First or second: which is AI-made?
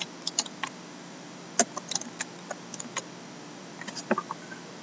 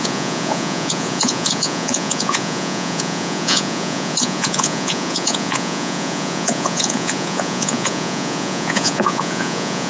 second